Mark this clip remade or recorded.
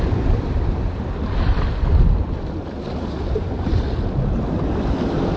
recorded